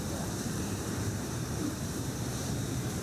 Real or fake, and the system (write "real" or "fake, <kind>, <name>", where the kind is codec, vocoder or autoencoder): fake, vocoder, BigVGAN v2